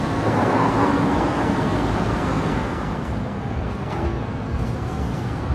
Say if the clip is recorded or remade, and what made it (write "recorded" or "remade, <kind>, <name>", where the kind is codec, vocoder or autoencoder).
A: remade, codec, SNAC